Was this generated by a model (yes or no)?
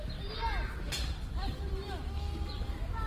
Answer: no